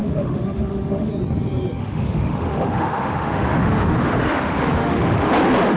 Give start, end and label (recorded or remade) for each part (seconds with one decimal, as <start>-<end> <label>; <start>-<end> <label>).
0.0-1.1 remade; 1.1-1.8 recorded; 1.8-5.3 remade; 5.3-5.8 recorded